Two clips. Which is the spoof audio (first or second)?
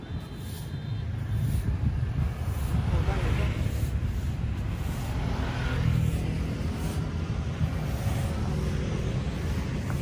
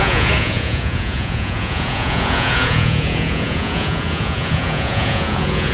second